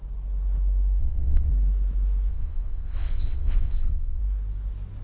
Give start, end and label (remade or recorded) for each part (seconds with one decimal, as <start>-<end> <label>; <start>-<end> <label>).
0.0-1.0 recorded; 1.0-1.5 remade; 1.5-2.3 recorded; 2.3-4.2 remade; 4.2-5.0 recorded